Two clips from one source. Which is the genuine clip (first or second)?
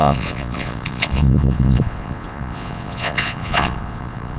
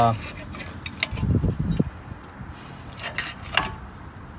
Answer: second